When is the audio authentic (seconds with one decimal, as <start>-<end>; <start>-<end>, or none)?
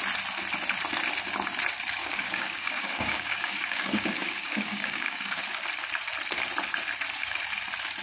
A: 0.0-2.0; 5.4-8.0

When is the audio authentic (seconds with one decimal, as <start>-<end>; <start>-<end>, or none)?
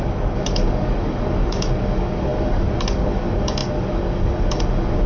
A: none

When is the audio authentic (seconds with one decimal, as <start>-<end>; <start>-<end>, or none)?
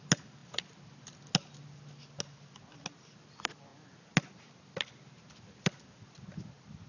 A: 0.0-6.9